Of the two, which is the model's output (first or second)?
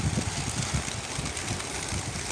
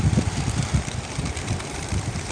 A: second